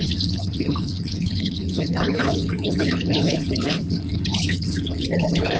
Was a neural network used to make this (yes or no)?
yes